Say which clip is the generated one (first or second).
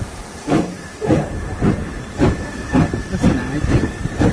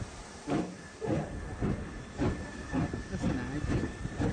first